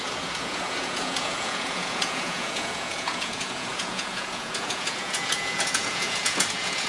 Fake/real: fake